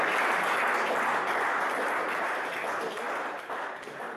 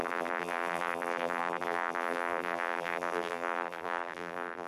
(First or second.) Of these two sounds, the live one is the first